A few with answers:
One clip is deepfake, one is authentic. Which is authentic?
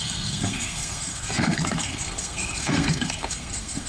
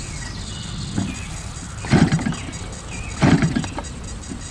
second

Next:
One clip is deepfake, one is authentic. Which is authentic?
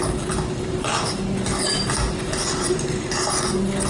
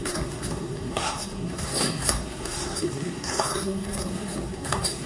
first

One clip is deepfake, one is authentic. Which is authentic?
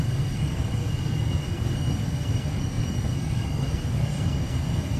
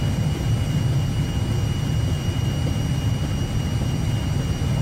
second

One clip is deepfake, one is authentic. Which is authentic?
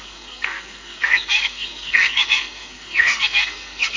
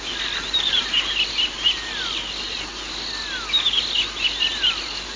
second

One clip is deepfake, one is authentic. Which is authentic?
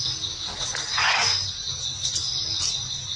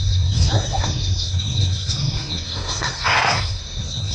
first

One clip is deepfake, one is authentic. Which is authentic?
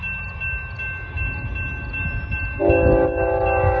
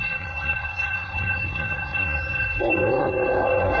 first